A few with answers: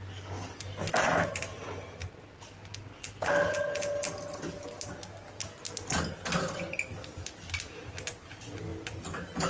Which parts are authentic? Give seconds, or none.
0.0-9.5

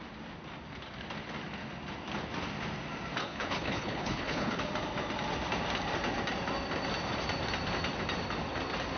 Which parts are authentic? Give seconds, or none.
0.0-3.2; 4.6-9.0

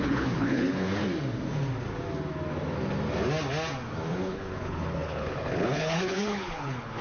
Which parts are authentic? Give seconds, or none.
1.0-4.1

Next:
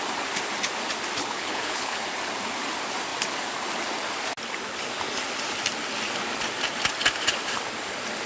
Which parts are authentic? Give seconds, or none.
0.0-1.2; 2.0-8.3

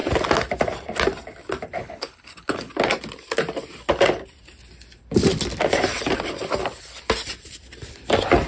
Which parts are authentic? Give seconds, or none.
0.0-1.8; 2.7-8.5

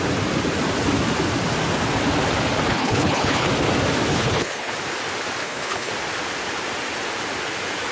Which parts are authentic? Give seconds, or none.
0.0-2.7; 3.5-4.1; 4.7-5.4; 5.9-7.9

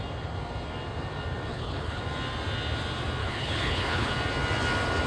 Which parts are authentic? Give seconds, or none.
0.0-1.5; 2.0-3.2; 4.1-5.1

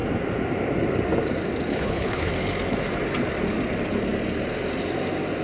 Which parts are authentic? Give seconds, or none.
0.0-1.7; 2.3-5.4